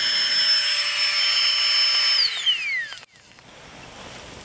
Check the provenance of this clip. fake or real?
real